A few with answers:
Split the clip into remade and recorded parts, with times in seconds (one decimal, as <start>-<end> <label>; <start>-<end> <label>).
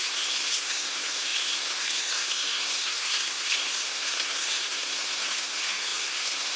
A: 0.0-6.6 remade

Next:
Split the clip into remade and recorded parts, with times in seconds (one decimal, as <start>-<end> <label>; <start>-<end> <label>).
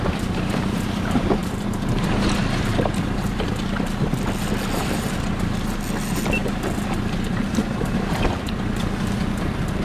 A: 0.0-1.4 recorded; 1.4-3.5 remade; 3.5-4.8 recorded; 4.8-5.3 remade; 5.3-9.8 recorded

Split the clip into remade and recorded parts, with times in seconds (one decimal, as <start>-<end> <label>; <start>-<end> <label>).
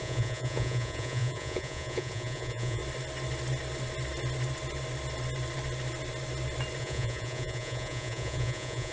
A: 0.0-2.8 remade; 2.8-6.8 recorded; 6.8-8.9 remade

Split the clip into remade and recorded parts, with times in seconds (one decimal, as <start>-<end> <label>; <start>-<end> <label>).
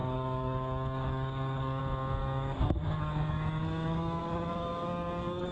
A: 0.0-1.8 remade; 1.8-2.2 recorded; 2.2-5.5 remade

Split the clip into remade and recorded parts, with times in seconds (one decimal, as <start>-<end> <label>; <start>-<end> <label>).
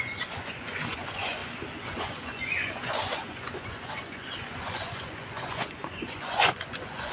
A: 0.0-7.1 remade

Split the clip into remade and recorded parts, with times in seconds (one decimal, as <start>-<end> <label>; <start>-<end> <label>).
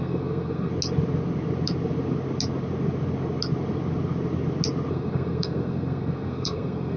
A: 0.0-0.7 remade; 0.7-4.9 recorded; 4.9-7.0 remade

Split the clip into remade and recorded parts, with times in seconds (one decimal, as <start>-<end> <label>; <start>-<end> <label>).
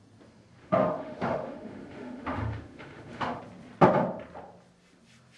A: 0.0-0.6 recorded; 0.6-3.4 remade; 3.4-5.4 recorded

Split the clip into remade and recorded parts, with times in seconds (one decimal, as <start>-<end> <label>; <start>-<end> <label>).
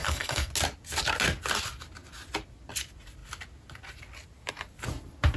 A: 0.0-0.5 remade; 0.5-5.4 recorded